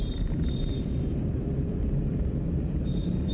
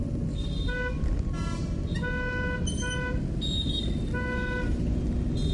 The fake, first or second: first